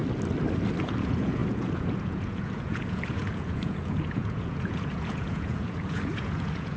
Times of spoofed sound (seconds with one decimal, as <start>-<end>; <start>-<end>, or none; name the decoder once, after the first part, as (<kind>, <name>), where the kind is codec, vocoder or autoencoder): 0.8-6.8 (vocoder, Vocos)